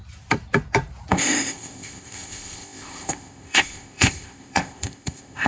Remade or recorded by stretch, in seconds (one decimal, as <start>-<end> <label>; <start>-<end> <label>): 0.0-1.1 recorded; 1.1-5.5 remade